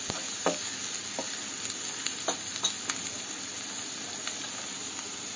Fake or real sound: real